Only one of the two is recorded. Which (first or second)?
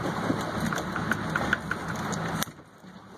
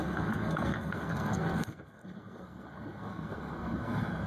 first